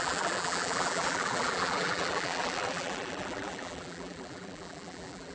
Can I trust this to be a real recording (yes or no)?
no